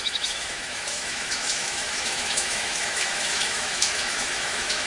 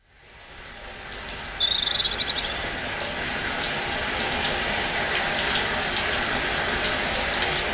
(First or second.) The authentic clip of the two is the second